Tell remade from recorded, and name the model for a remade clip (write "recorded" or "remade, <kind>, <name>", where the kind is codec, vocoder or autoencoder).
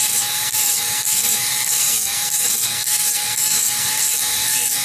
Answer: remade, codec, SNAC